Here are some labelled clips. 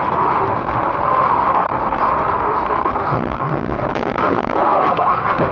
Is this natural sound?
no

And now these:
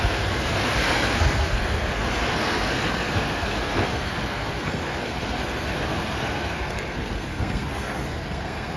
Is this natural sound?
no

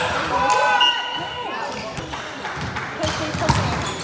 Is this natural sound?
yes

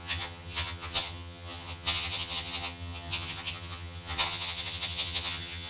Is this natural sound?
no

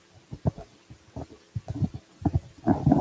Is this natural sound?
yes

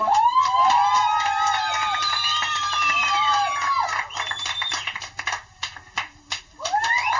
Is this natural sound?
yes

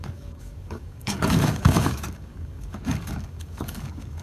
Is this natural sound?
no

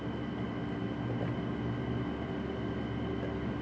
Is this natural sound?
yes